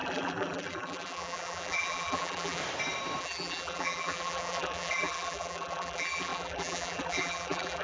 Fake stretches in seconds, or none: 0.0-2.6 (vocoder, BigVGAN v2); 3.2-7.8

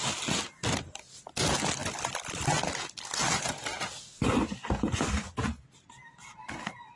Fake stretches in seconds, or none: none

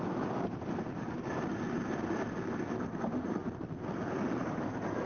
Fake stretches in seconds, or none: 0.0-1.5 (vocoder, BigVGAN v2); 2.9-3.4; 4.4-5.1

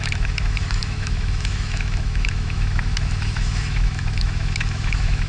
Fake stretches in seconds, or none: 0.0-5.3 (autoencoder, DAC-VAE)